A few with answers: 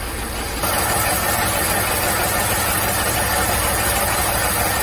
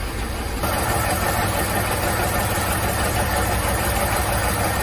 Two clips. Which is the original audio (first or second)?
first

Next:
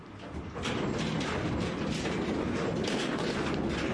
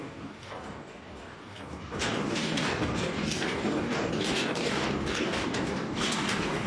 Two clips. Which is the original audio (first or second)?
first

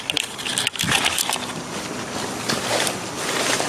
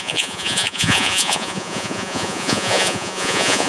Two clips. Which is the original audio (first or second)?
first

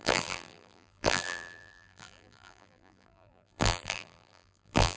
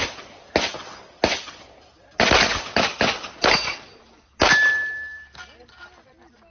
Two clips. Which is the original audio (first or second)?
second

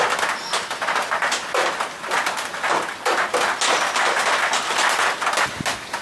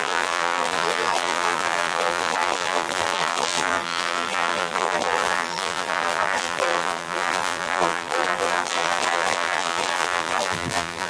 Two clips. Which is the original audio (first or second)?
first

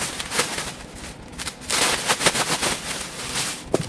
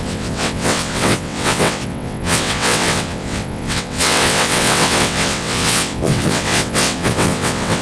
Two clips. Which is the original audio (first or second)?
first